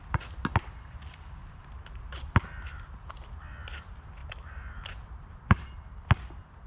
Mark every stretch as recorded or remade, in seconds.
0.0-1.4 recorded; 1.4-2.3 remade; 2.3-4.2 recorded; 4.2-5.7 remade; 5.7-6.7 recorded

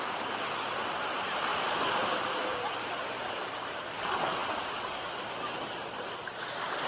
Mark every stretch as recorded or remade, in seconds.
0.0-1.5 recorded; 1.5-3.8 remade; 3.8-6.9 recorded

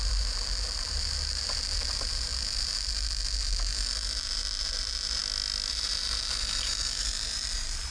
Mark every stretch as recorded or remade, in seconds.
0.0-5.2 remade; 5.2-5.7 recorded; 5.7-7.9 remade

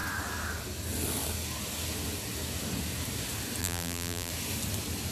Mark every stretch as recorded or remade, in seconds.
0.0-3.6 recorded; 3.6-4.3 remade; 4.3-5.1 recorded

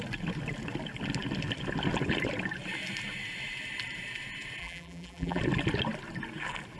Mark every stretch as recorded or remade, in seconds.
0.0-4.6 recorded; 4.6-5.4 remade; 5.4-6.8 recorded